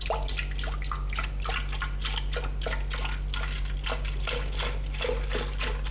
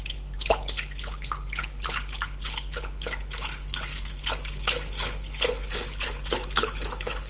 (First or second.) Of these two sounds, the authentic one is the first